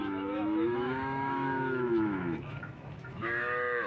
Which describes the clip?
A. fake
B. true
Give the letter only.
A